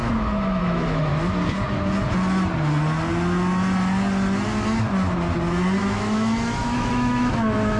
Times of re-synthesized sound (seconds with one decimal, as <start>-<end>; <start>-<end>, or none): 0.0-1.1; 5.8-7.8